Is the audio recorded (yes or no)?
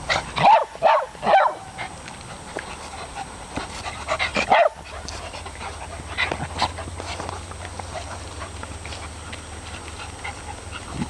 yes